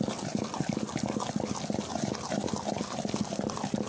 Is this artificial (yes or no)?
no